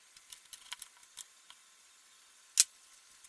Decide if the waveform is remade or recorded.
recorded